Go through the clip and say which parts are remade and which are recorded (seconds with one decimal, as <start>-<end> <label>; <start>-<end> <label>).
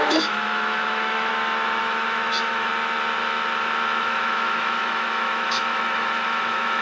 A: 0.0-1.3 remade; 1.3-1.8 recorded; 1.8-2.7 remade; 2.7-4.0 recorded; 4.0-6.8 remade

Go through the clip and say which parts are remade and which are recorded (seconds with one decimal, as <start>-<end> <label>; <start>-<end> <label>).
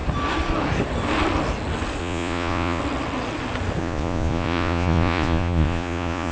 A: 0.0-2.0 recorded; 2.0-2.8 remade; 2.8-3.8 recorded; 3.8-6.3 remade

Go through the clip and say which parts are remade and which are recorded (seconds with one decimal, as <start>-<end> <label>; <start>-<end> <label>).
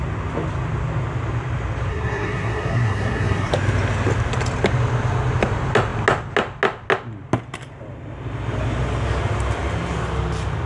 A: 0.0-1.9 recorded; 1.9-3.5 remade; 3.5-10.7 recorded